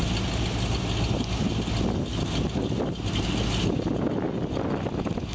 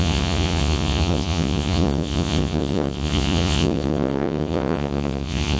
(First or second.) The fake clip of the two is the second